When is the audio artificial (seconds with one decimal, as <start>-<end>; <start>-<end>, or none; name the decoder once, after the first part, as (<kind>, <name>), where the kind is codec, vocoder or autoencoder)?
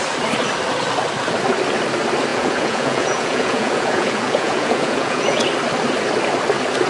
2.3-5.4 (vocoder, Vocos)